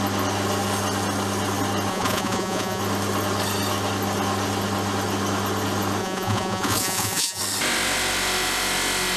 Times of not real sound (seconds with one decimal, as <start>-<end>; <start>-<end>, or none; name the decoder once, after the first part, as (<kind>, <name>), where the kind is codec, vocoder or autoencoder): 1.9-2.8 (vocoder, Vocos); 6.0-7.4